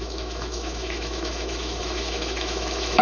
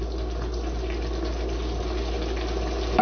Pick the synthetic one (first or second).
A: first